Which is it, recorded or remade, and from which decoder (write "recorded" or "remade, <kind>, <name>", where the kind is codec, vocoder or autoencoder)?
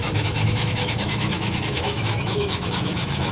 remade, autoencoder, DAC-VAE